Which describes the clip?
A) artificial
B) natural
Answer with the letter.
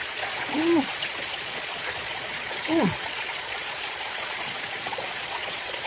A